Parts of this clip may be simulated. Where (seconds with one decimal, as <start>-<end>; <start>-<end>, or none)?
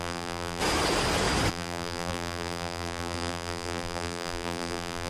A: 0.0-0.6; 1.5-5.1